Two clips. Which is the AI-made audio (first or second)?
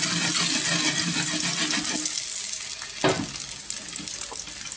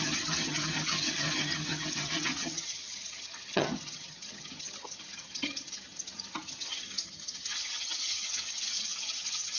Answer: second